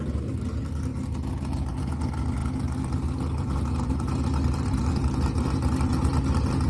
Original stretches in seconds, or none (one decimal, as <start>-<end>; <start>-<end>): 0.0-6.7